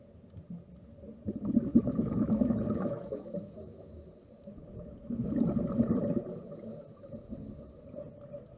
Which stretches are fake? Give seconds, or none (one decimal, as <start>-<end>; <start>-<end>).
1.7-4.0